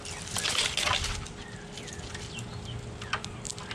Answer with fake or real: real